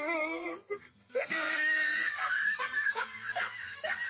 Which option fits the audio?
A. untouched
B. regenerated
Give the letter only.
B